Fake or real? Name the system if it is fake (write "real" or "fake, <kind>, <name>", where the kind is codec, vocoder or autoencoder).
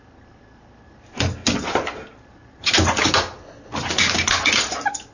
real